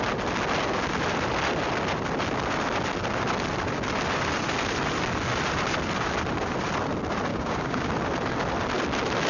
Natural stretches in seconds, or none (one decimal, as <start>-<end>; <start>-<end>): 0.0-7.3; 7.9-9.3